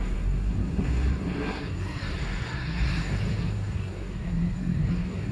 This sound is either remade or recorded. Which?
remade